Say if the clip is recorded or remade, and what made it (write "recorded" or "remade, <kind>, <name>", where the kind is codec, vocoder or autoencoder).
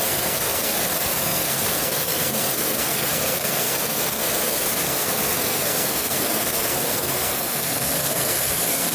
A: remade, codec, SNAC